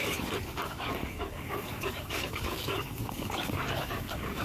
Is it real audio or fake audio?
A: fake